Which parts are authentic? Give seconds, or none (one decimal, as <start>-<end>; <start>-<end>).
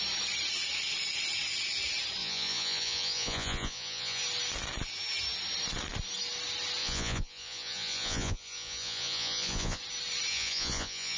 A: 0.0-2.2; 4.2-6.8; 9.8-10.3